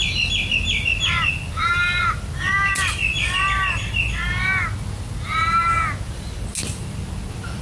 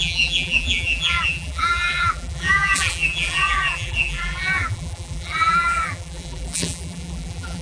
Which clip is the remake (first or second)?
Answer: second